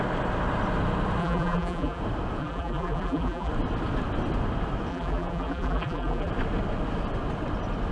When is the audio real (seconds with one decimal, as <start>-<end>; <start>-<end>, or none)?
0.0-1.2; 2.0-2.4; 3.5-4.9; 6.3-7.9